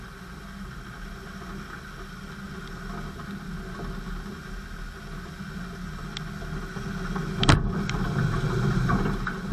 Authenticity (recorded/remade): recorded